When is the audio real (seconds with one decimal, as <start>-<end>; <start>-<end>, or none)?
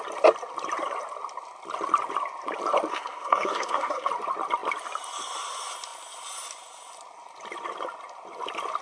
0.0-2.9; 4.1-8.8